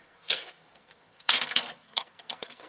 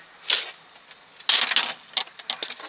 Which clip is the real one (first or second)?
second